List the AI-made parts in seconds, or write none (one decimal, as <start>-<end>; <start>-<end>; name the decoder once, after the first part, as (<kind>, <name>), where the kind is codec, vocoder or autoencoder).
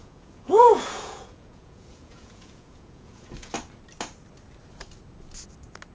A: 0.0-3.5 (vocoder, Vocos)